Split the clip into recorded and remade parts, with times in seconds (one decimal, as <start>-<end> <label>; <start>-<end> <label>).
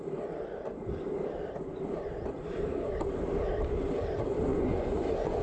0.0-4.5 recorded; 4.5-5.4 remade